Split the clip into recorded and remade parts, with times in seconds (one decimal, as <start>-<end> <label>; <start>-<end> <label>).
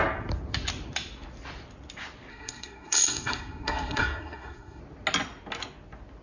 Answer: 0.0-2.3 recorded; 2.3-4.8 remade; 4.8-6.2 recorded